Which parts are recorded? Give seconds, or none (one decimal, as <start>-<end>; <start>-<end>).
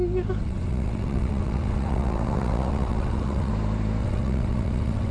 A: 0.0-0.4; 3.5-4.0